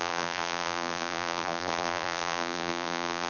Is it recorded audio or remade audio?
remade